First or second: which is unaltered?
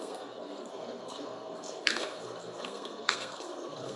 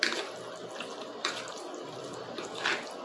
second